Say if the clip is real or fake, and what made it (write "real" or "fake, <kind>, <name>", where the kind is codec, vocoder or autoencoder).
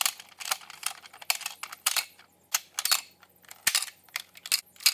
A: real